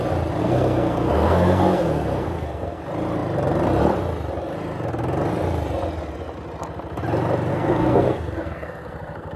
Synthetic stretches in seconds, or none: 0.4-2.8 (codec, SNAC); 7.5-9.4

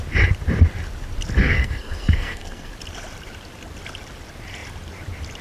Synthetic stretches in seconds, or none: 1.4-2.7 (codec, SNAC)

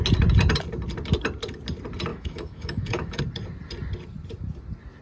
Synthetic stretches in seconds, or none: 2.1-3.2 (autoencoder, DAC-VAE)

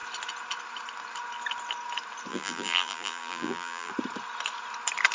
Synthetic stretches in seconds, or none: 2.3-3.9 (vocoder, BigVGAN v2)

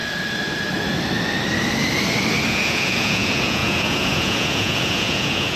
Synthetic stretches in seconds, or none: 2.5-5.6 (vocoder, Vocos)

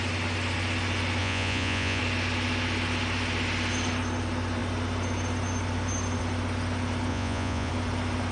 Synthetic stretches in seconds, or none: 1.2-2.0 (vocoder, Vocos); 7.1-7.7